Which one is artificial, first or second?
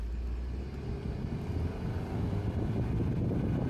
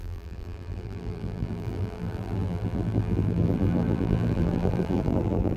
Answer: second